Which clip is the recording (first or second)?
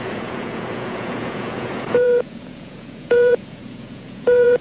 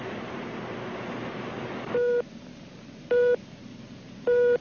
second